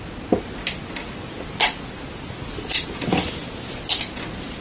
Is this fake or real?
real